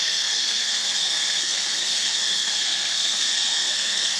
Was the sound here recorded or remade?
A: remade